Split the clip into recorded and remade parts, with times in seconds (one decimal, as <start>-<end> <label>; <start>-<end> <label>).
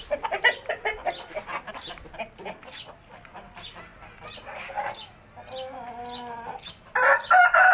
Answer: 0.0-7.7 recorded